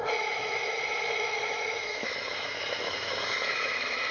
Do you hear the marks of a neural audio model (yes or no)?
yes